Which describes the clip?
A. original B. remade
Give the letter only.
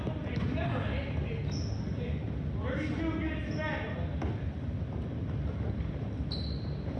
A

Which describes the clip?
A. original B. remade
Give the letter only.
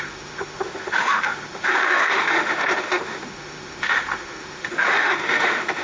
B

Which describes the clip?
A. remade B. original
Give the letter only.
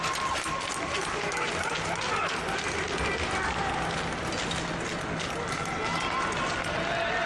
B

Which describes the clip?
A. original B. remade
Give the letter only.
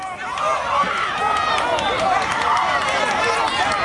A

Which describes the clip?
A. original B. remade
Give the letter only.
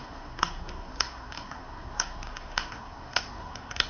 B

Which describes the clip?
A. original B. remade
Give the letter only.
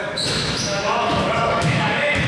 B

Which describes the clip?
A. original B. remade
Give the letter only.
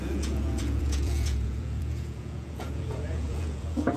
B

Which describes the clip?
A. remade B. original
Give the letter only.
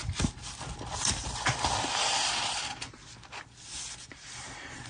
B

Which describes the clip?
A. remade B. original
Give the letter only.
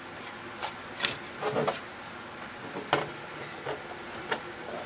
B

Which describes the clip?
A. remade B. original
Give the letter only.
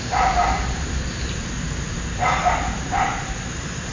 A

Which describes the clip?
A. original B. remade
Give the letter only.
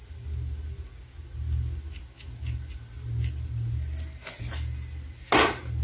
A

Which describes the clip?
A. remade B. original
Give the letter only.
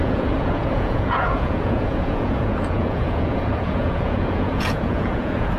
A